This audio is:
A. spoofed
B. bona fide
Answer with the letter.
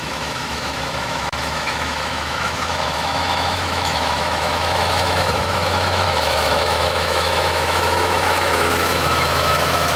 A